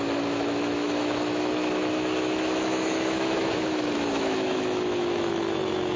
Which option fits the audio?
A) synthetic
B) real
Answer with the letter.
A